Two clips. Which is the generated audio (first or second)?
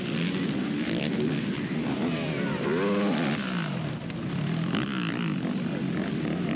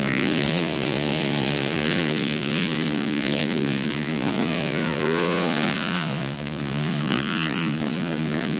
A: second